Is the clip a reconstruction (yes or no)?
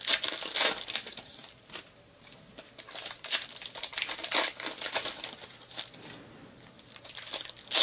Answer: no